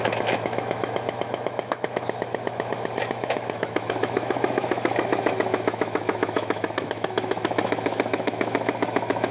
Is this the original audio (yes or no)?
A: no